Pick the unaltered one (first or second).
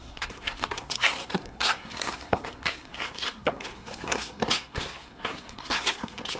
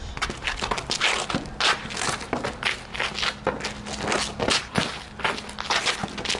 second